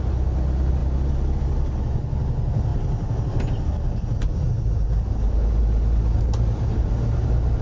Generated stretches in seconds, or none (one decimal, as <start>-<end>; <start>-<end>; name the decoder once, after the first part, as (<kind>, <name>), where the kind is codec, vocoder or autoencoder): 2.7-5.3 (vocoder, BigVGAN v2)